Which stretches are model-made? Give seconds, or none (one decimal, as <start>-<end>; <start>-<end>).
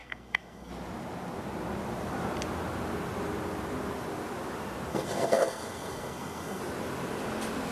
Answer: 0.0-0.7; 4.9-6.6